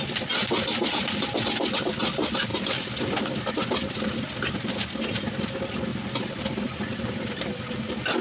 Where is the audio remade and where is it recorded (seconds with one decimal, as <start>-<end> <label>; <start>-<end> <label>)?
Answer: 0.0-8.2 recorded